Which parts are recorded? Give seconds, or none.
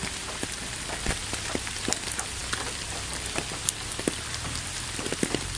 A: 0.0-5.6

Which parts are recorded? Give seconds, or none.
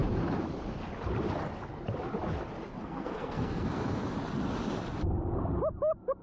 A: 0.0-2.8; 4.0-6.2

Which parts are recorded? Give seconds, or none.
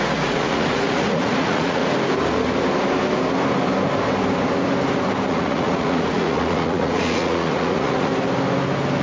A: 1.8-5.3; 8.1-9.0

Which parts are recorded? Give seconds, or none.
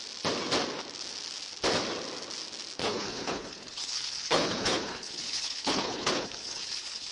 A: 0.0-2.8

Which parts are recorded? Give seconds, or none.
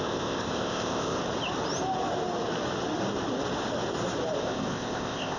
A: 1.2-4.4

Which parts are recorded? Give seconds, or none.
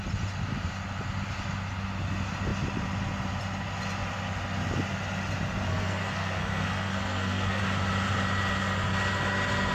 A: 0.0-5.7; 7.6-9.7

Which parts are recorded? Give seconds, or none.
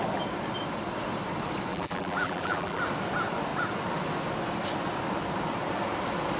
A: 0.0-1.7; 2.8-6.4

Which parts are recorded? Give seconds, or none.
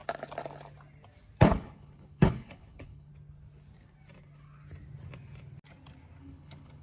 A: 0.0-1.4; 3.1-6.2